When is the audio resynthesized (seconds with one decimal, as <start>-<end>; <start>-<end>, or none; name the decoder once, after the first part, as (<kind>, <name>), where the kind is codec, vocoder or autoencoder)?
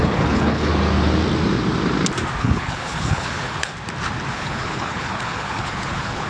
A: 0.0-0.7 (codec, HILCodec); 2.4-3.7; 4.3-6.3